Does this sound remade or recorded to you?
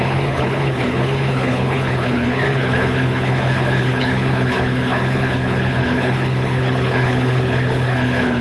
remade